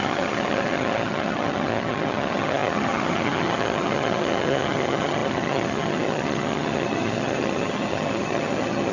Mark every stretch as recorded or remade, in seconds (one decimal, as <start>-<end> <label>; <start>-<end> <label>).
0.0-8.9 remade